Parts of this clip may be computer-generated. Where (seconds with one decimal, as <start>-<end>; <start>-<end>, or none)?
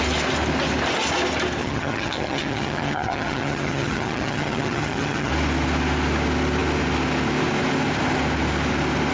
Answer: 1.6-5.3